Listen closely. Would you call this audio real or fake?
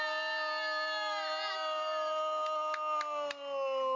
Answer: real